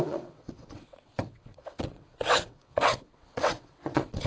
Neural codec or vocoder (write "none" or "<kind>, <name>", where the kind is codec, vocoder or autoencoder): vocoder, WaveNeXt